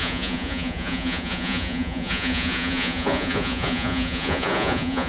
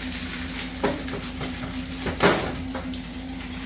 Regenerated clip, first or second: first